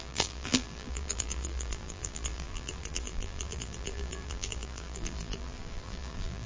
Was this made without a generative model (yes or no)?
no